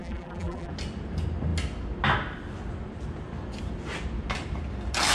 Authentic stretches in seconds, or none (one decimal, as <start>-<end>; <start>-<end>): 0.7-5.1